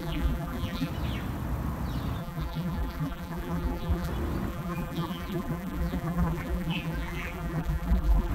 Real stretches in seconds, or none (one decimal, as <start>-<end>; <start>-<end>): 0.9-2.2; 4.1-4.5